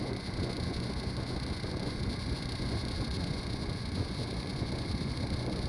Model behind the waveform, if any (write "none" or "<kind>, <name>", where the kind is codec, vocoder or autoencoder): vocoder, Vocos